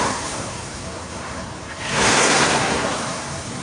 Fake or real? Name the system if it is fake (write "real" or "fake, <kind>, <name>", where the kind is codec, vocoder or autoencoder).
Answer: fake, codec, SNAC